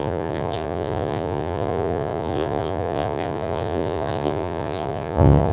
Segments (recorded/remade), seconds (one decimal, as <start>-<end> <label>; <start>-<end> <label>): 0.0-5.5 remade